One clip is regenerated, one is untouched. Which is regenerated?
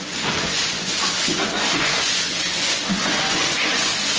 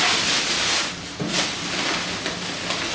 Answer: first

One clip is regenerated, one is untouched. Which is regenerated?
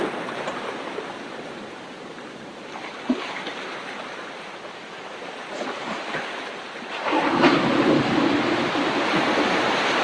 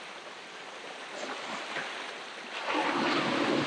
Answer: first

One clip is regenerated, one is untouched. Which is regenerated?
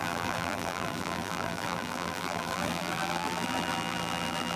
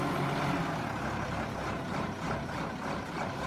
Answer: first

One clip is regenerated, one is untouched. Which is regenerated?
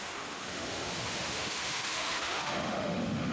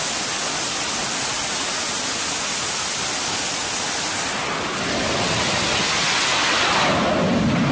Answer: first